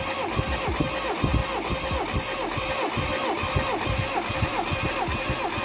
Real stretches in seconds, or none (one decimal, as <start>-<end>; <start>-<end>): 0.0-5.6